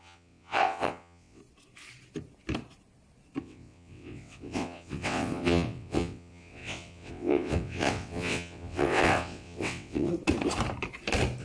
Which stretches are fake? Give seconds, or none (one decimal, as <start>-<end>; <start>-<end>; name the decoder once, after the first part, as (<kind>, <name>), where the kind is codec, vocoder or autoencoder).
0.0-1.4 (vocoder, WaveNeXt); 3.4-10.1